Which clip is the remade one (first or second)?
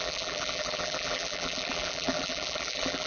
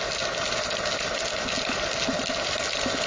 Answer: first